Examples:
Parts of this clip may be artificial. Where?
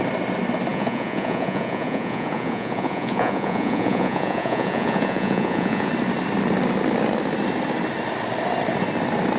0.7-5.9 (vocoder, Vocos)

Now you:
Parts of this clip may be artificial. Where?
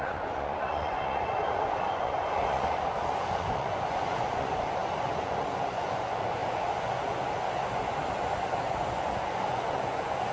0.0-10.3 (vocoder, Vocos)